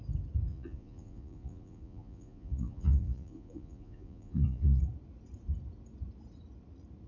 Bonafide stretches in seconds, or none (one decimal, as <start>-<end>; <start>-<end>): 0.0-0.5; 4.8-7.1

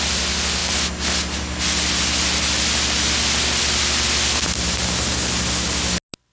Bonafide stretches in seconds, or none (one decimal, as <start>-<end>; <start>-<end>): 0.0-6.3

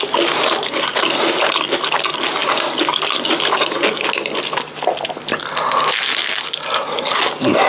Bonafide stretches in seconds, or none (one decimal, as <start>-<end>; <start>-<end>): 0.0-7.7

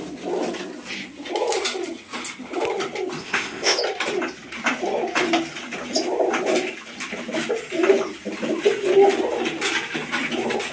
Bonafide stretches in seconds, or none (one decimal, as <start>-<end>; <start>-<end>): 0.0-3.2; 3.8-10.7

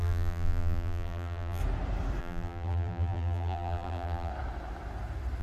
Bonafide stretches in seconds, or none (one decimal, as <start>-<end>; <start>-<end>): 1.6-2.2; 4.3-5.4

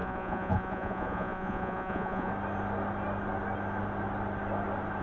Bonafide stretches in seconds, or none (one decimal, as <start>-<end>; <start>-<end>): 2.3-5.0

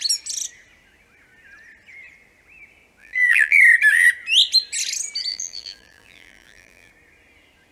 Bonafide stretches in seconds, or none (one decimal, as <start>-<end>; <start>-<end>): 0.0-3.0; 3.6-5.3; 6.9-7.7

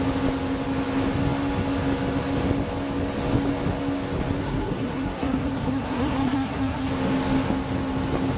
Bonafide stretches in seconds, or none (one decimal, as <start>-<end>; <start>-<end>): 0.0-4.4; 6.9-8.4